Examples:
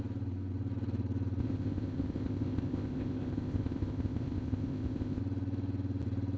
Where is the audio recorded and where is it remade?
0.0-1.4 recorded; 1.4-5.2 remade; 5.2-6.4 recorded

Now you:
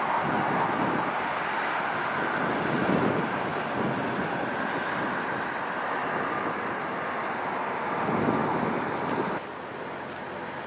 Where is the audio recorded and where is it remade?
0.0-10.7 recorded

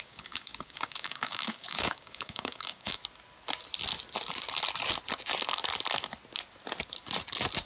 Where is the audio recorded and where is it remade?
0.0-3.0 remade; 3.0-7.7 recorded

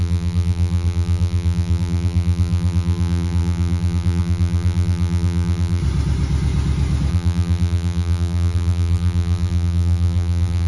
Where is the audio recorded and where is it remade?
0.0-5.8 remade; 5.8-7.1 recorded; 7.1-10.7 remade

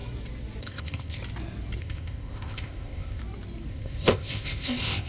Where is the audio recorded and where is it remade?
0.0-0.6 recorded; 0.6-1.2 remade; 1.2-1.8 recorded; 1.8-3.2 remade; 3.2-3.7 recorded; 3.7-5.1 remade

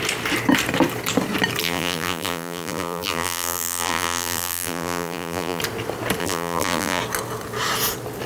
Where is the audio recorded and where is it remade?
0.0-1.6 recorded; 1.6-5.6 remade; 5.6-6.2 recorded; 6.2-7.0 remade; 7.0-8.3 recorded